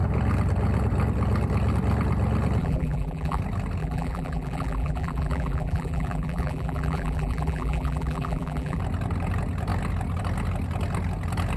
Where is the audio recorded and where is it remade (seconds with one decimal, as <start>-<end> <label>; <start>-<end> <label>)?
0.0-2.6 recorded; 2.6-3.4 remade; 3.4-3.8 recorded; 3.8-8.8 remade; 8.8-11.6 recorded